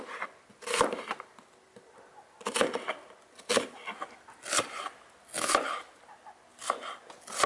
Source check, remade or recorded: recorded